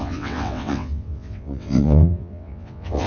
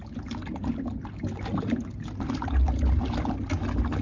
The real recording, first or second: second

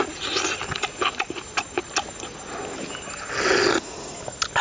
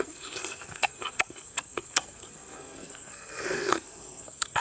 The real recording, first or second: first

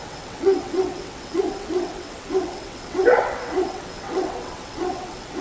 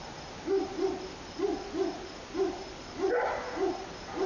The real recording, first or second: second